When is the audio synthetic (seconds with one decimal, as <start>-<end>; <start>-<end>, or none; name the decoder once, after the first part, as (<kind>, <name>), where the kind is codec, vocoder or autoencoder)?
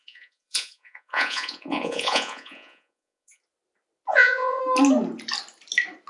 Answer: 0.0-3.4 (vocoder, Vocos); 4.1-4.6